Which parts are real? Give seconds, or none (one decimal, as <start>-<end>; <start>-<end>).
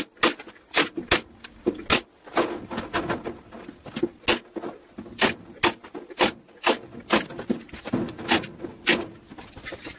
0.0-10.0